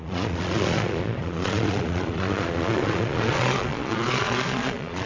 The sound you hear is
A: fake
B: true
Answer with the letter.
A